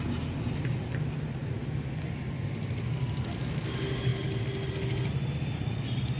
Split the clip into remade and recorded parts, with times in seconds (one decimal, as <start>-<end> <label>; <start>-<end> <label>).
0.0-6.2 recorded